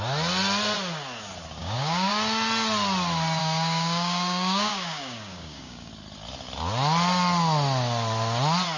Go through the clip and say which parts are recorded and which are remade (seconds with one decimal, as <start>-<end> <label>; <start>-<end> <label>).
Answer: 0.0-1.6 recorded; 1.6-2.1 remade; 2.1-3.4 recorded; 3.4-5.9 remade; 5.9-8.8 recorded